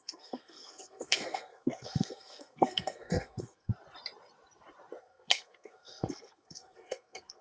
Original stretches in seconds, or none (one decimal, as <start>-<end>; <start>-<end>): 3.7-5.0